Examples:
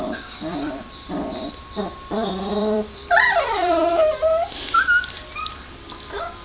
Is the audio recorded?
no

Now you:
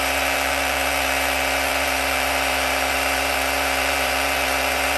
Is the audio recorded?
no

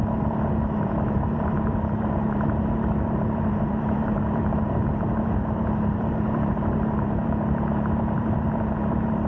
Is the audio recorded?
no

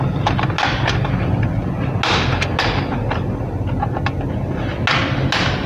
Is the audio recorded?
yes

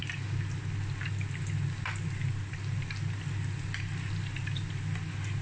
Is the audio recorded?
yes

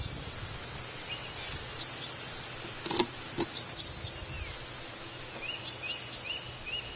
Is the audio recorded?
yes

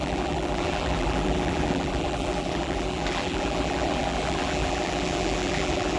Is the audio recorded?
no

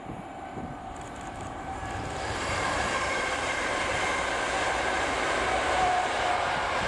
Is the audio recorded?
no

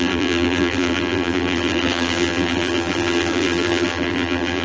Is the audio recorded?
no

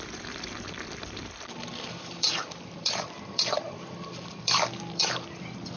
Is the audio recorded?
no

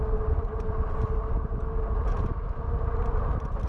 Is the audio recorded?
yes